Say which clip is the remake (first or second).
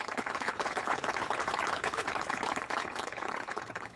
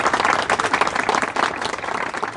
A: first